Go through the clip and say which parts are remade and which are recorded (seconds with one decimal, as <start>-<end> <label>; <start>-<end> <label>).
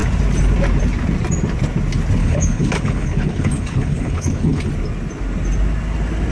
0.0-2.2 recorded; 2.2-4.7 remade; 4.7-6.3 recorded